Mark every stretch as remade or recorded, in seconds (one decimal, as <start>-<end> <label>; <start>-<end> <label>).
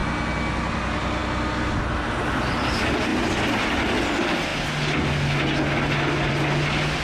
0.0-7.0 recorded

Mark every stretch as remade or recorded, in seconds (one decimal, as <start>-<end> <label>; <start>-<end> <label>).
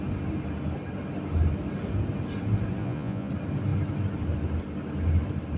0.0-2.8 recorded; 2.8-3.3 remade; 3.3-5.6 recorded